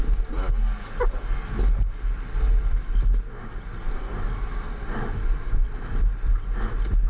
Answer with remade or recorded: recorded